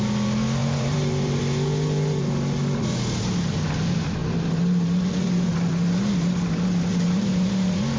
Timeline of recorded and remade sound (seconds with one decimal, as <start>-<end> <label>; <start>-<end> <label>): 0.0-0.6 recorded; 0.6-1.4 remade; 1.4-6.9 recorded; 6.9-8.0 remade